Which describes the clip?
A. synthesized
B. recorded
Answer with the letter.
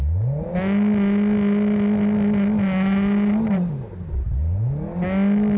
B